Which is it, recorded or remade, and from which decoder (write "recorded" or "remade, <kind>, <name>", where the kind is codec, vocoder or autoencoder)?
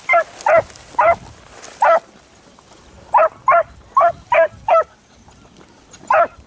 recorded